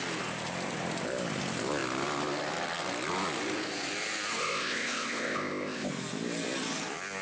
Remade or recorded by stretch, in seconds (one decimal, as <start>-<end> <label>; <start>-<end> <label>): 0.0-4.4 recorded; 4.4-5.9 remade; 5.9-7.2 recorded